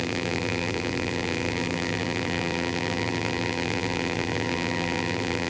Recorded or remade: remade